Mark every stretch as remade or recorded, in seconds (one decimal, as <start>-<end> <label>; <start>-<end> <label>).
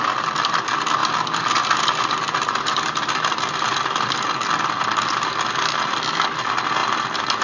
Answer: 0.0-7.4 recorded